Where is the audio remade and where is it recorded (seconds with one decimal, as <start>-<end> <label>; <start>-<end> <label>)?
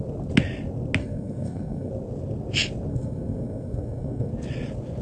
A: 0.0-1.0 recorded; 1.0-1.9 remade; 1.9-2.9 recorded; 2.9-4.3 remade; 4.3-5.0 recorded